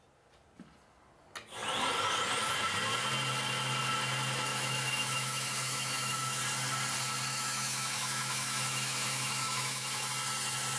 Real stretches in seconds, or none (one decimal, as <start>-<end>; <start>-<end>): 0.0-4.5; 6.4-7.3; 10.1-10.8